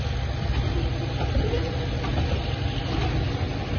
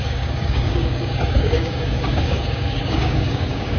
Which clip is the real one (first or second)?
first